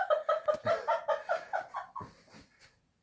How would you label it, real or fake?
real